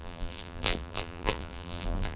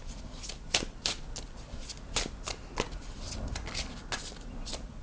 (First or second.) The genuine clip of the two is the second